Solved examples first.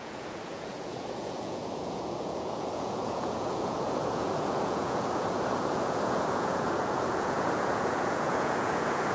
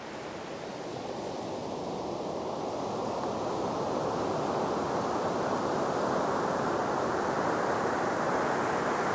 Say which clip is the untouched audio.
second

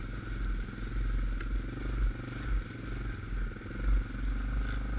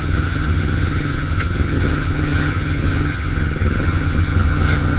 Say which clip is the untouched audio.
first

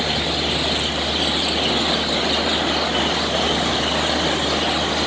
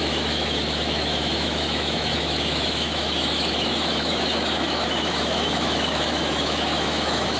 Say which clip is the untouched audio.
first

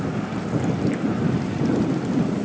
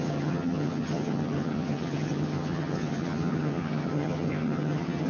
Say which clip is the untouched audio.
first